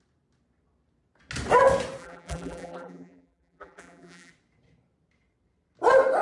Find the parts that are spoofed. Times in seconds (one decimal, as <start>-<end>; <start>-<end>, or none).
2.0-4.3